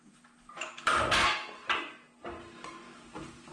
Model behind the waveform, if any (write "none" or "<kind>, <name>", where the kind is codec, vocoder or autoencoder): none